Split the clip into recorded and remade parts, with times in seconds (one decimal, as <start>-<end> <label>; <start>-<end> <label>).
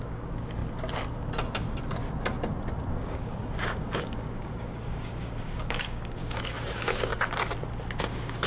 0.0-0.6 remade; 0.6-2.9 recorded; 2.9-7.1 remade; 7.1-8.0 recorded; 8.0-8.5 remade